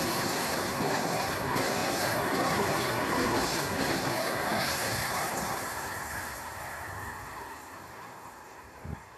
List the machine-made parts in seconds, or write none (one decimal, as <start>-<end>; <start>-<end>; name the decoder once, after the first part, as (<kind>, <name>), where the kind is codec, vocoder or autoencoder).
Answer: 0.0-9.2 (codec, SNAC)